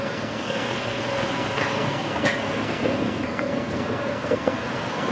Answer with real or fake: fake